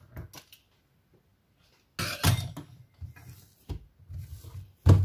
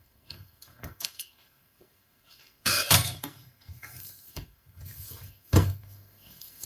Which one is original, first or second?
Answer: first